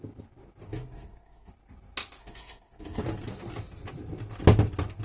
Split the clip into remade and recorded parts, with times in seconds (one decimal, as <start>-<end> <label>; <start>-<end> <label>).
0.0-0.7 recorded; 0.7-1.5 remade; 1.5-2.2 recorded; 2.2-3.0 remade; 3.0-5.0 recorded